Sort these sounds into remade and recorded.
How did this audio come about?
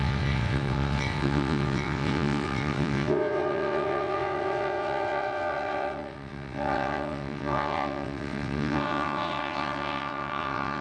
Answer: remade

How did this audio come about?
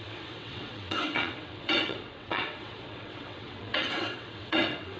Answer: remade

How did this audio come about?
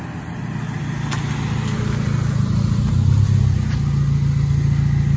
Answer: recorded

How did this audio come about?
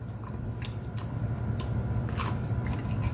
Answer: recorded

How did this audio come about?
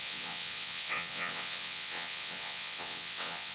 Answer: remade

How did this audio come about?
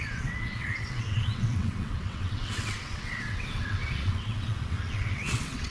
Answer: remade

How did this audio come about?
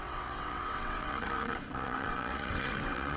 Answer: remade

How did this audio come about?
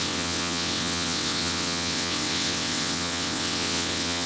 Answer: remade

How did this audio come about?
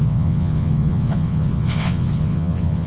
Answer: remade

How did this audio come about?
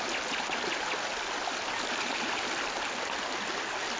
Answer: recorded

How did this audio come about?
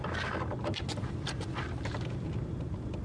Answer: recorded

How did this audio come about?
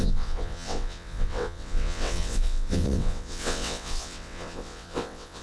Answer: remade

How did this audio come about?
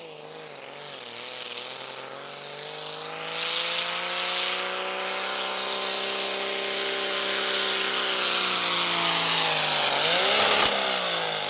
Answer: recorded